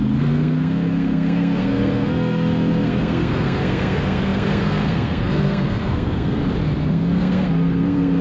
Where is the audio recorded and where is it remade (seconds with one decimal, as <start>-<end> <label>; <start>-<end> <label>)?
0.0-6.4 remade; 6.4-6.9 recorded; 6.9-8.2 remade

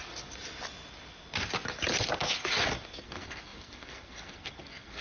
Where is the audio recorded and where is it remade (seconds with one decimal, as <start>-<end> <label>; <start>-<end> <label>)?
0.0-3.0 recorded; 3.0-5.0 remade

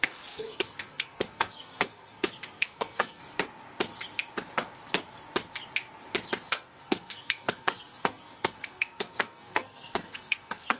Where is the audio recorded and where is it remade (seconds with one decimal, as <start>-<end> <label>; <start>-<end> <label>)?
0.0-3.2 remade; 3.2-6.5 recorded; 6.5-10.8 remade

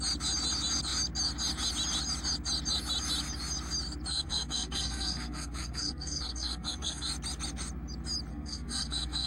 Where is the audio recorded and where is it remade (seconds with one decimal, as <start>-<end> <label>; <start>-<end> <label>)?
0.0-4.1 recorded; 4.1-7.1 remade; 7.1-8.3 recorded; 8.3-9.3 remade

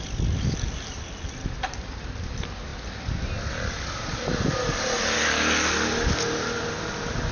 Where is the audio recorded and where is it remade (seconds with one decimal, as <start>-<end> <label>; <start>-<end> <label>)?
0.0-7.3 recorded

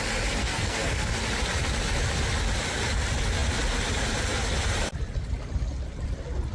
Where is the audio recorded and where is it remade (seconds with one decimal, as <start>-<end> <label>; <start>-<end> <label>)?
0.0-0.4 recorded; 0.4-1.1 remade; 1.1-6.5 recorded

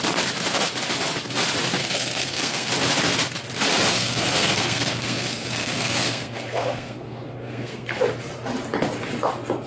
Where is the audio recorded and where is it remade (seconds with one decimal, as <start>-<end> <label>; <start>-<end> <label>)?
0.0-1.8 recorded; 1.8-2.7 remade; 2.7-3.9 recorded; 3.9-8.0 remade; 8.0-9.7 recorded

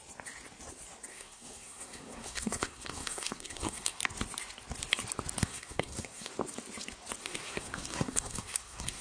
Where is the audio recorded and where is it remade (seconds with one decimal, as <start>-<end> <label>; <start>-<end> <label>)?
0.0-1.1 recorded; 1.1-4.0 remade; 4.0-5.4 recorded; 5.4-6.3 remade; 6.3-7.2 recorded; 7.2-9.0 remade